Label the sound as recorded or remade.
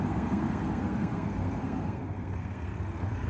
remade